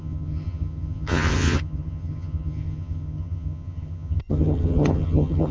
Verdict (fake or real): fake